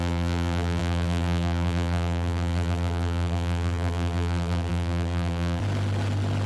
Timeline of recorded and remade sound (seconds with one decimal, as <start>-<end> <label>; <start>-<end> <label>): 0.0-5.6 remade; 5.6-6.5 recorded